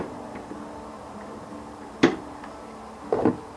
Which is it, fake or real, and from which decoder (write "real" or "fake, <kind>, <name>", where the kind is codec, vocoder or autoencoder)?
real